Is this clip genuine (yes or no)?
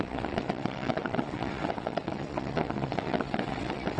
no